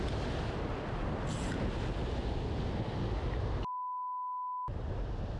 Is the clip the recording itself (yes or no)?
yes